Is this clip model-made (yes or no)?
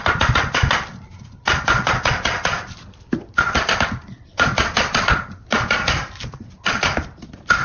no